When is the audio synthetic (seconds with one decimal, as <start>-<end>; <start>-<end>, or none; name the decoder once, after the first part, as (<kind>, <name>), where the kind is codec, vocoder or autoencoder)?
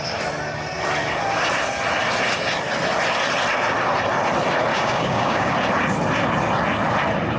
4.7-5.5 (codec, DAC)